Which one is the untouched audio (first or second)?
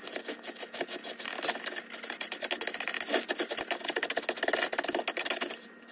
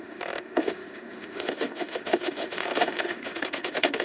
first